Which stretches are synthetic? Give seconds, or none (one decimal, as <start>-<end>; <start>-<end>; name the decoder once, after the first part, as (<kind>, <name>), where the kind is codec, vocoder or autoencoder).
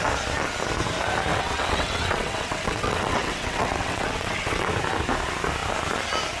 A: 1.3-4.7 (vocoder, WaveNeXt)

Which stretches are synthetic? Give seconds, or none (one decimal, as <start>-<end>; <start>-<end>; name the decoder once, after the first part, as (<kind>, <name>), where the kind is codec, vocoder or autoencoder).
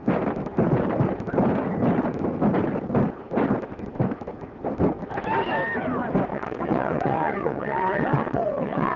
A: 6.3-9.0 (vocoder, WaveNeXt)